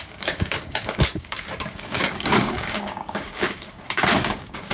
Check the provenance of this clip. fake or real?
fake